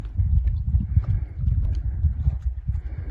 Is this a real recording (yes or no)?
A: yes